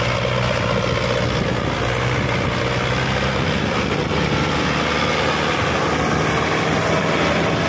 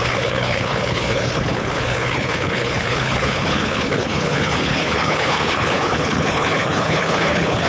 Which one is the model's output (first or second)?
second